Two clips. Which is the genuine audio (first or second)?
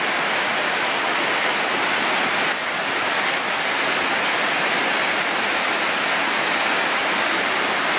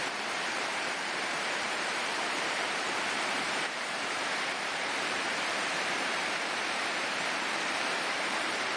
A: first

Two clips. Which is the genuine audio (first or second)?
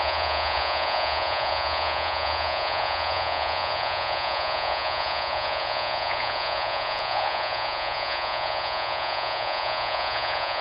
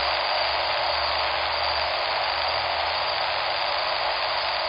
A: second